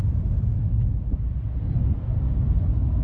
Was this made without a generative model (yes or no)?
yes